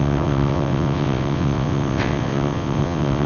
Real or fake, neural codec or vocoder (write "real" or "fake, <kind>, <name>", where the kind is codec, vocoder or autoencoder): fake, vocoder, WaveNeXt